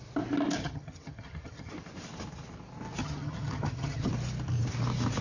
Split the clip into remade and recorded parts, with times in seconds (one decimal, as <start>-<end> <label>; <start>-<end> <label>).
0.0-0.6 recorded; 0.6-1.7 remade; 1.7-3.0 recorded; 3.0-4.1 remade; 4.1-5.2 recorded